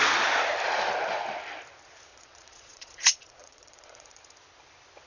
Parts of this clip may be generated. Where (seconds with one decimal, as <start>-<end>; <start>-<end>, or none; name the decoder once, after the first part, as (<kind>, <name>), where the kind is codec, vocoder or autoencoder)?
2.1-4.2 (vocoder, Vocos)